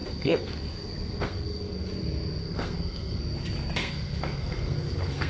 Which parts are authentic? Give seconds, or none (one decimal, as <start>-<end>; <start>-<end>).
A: 1.9-2.4; 3.2-3.8